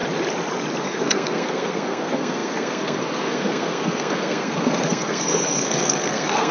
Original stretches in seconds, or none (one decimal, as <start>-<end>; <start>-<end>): 0.0-0.8